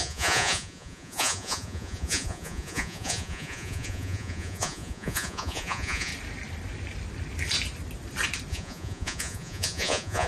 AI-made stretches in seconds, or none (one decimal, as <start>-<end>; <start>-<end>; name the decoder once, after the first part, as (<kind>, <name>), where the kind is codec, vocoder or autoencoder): 0.0-6.1 (vocoder, Vocos); 8.5-10.3